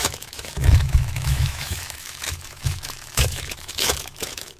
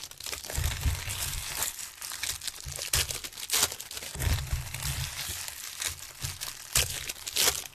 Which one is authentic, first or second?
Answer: second